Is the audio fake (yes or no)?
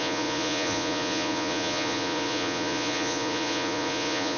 yes